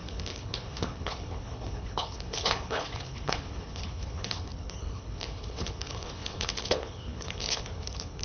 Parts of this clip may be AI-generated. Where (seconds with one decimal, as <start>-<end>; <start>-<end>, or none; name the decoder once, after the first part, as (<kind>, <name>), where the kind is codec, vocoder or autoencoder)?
0.0-8.2 (codec, HILCodec)